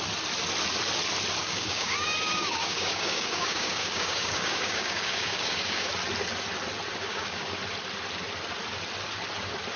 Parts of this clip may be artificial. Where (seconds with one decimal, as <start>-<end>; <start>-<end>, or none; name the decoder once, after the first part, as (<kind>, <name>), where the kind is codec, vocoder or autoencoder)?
1.4-5.9 (codec, DAC); 7.0-7.5

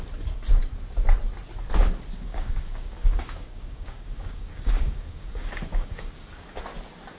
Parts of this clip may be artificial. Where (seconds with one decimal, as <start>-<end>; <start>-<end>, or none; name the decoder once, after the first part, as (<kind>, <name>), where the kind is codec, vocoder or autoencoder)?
2.3-6.6 (codec, DAC)